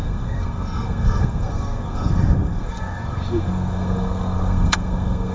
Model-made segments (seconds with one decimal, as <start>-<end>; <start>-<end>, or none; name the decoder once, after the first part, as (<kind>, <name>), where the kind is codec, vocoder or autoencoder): 0.0-5.3 (codec, SNAC)

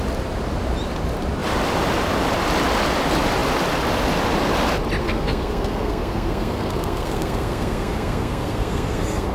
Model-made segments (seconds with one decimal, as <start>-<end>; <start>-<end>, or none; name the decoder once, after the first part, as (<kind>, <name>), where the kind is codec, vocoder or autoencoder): 5.0-9.3 (codec, SNAC)

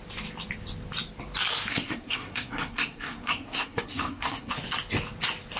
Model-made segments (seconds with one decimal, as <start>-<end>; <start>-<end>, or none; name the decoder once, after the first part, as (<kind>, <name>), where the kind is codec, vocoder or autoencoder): 1.7-4.5 (codec, SNAC)

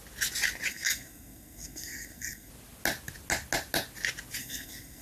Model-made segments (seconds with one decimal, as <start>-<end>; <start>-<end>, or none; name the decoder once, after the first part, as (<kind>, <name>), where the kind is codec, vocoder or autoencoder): 0.7-2.5 (codec, SNAC); 4.4-5.0

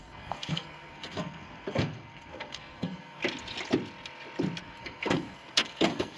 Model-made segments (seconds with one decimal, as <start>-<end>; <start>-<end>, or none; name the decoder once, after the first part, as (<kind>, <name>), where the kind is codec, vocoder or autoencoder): 0.0-3.2 (codec, SNAC); 4.6-6.2

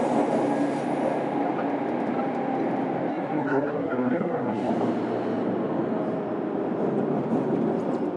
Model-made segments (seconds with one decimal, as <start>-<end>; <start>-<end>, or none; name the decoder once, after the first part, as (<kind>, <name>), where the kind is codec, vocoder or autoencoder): 3.1-4.7 (codec, SNAC)

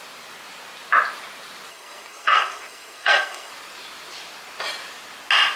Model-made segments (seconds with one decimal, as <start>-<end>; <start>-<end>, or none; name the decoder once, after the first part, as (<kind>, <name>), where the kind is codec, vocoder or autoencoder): 1.7-3.5 (codec, SNAC)

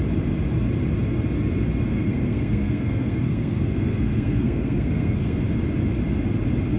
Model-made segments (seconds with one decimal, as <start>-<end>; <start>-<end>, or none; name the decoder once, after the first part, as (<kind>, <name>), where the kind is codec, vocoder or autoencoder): 1.9-5.4 (codec, SNAC)